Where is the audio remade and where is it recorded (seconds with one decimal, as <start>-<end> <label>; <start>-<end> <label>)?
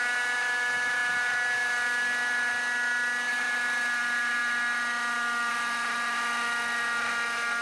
0.0-7.6 recorded